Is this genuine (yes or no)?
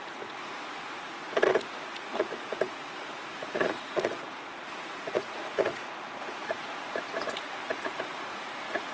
no